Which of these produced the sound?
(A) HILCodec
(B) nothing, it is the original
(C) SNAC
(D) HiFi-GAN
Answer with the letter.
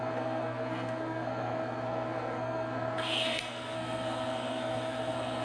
C